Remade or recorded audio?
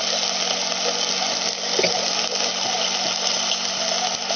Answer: recorded